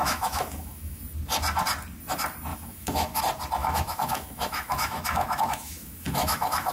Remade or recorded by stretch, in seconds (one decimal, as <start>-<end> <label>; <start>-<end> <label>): 0.0-1.0 remade; 1.0-2.5 recorded; 2.5-3.2 remade; 3.2-3.6 recorded; 3.6-6.7 remade